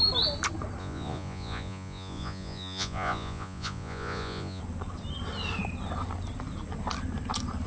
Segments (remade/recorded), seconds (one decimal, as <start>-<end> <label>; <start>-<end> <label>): 0.0-0.8 recorded; 0.8-4.6 remade; 4.6-7.7 recorded